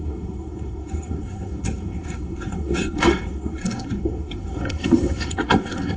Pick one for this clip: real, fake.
fake